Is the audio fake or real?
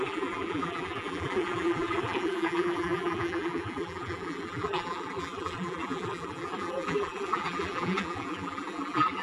fake